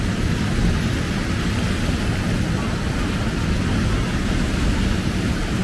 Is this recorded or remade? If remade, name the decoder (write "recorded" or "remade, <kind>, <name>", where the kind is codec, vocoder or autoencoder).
recorded